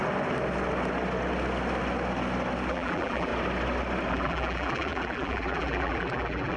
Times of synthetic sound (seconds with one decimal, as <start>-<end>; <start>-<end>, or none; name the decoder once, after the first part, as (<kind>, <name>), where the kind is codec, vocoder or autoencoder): 2.7-3.3 (vocoder, BigVGAN v2); 4.1-6.6